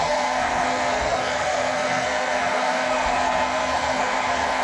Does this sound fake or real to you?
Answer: fake